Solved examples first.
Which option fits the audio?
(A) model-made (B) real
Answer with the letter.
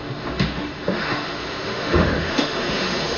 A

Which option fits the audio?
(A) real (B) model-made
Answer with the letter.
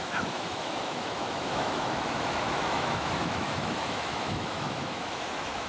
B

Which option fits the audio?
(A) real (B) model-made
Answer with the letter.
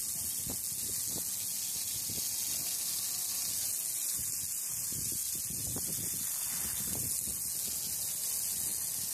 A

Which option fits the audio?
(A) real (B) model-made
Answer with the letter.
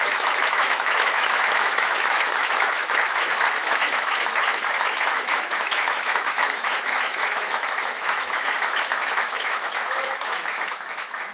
B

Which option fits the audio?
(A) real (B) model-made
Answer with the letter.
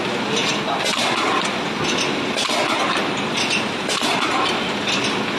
A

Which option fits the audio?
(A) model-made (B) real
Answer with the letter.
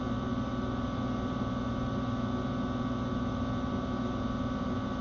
B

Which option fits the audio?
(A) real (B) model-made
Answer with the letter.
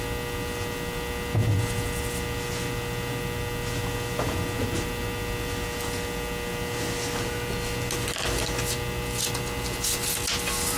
A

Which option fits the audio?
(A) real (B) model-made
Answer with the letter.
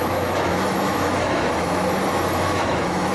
B